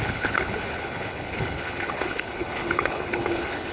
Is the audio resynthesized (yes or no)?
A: yes